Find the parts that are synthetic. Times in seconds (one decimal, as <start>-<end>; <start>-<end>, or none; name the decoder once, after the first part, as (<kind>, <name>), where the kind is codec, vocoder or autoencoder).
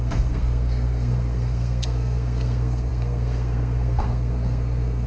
0.0-5.1 (codec, SNAC)